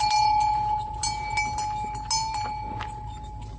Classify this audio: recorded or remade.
recorded